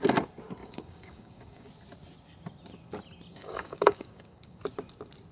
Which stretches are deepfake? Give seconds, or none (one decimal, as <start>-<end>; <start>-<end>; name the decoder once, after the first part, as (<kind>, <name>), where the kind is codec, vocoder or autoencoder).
0.6-1.7 (codec, DAC); 3.3-4.6